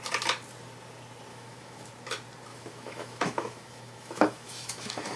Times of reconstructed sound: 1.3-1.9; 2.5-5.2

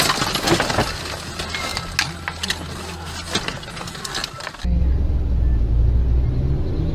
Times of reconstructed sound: none

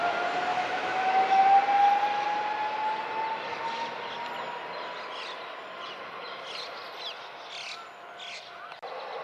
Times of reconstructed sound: 0.5-1.5

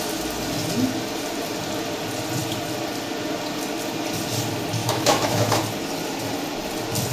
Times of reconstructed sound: 4.8-5.6

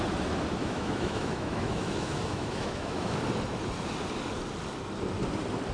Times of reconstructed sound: 0.6-3.2

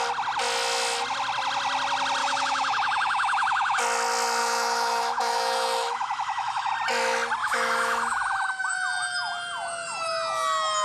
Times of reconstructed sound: 2.2-3.8; 4.4-6.7; 7.4-8.6

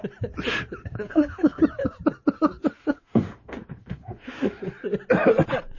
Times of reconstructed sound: 0.8-1.6; 2.8-4.6